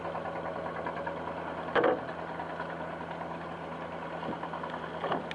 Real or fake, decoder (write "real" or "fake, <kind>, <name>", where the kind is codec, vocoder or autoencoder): real